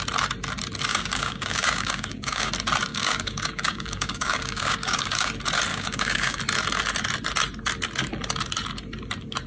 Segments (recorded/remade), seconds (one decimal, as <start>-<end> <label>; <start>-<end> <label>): 0.0-0.9 recorded; 0.9-2.5 remade; 2.5-2.9 recorded; 2.9-5.3 remade; 5.3-5.7 recorded; 5.7-6.4 remade; 6.4-9.5 recorded

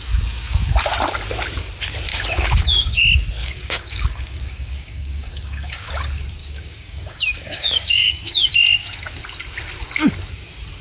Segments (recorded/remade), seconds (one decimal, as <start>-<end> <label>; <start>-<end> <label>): 0.0-2.1 recorded; 2.1-3.0 remade; 3.0-3.4 recorded; 3.4-5.9 remade; 5.9-6.4 recorded; 6.4-8.5 remade; 8.5-10.8 recorded

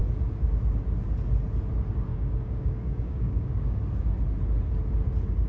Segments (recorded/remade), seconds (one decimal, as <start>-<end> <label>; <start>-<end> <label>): 0.0-2.1 recorded; 2.1-3.8 remade; 3.8-5.5 recorded

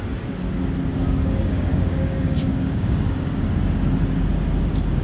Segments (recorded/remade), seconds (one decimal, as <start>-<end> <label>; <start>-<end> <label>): 0.0-0.9 recorded; 0.9-3.4 remade; 3.4-5.0 recorded

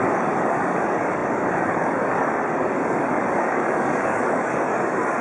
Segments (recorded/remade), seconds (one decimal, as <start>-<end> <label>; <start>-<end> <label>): 0.0-5.2 remade

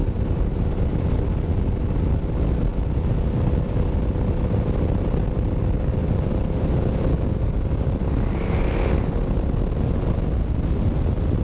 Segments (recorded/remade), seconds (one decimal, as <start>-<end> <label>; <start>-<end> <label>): 0.0-7.1 recorded; 7.1-7.9 remade; 7.9-11.4 recorded